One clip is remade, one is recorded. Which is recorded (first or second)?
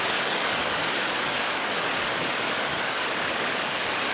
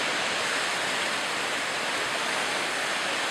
second